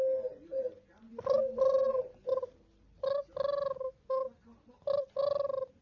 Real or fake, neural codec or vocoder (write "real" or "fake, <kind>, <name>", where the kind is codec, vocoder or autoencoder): real